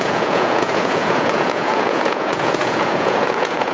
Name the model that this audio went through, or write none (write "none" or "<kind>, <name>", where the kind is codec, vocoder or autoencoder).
vocoder, Vocos